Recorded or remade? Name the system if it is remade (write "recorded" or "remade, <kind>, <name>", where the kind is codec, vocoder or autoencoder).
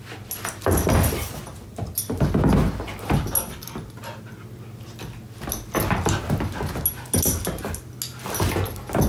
recorded